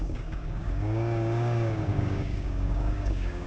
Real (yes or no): no